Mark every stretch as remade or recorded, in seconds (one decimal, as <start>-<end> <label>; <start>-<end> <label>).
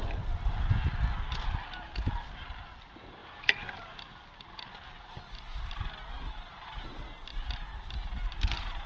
0.0-8.9 recorded